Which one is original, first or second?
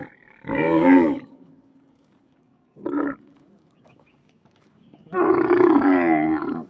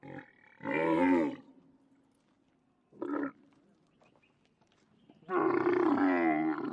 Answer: second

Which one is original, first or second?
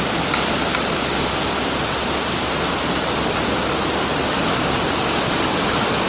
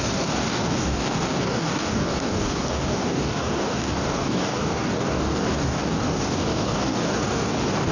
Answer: first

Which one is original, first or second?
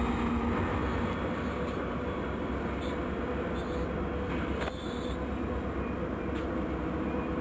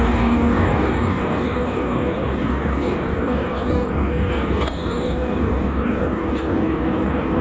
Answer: first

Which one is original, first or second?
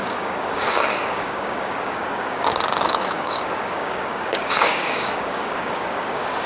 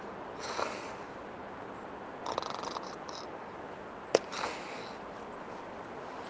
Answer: second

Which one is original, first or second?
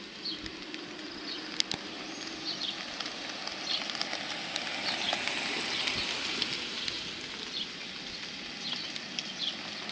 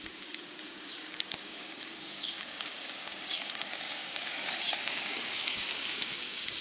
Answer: first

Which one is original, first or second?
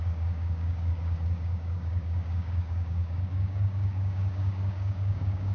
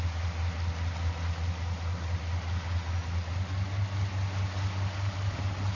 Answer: second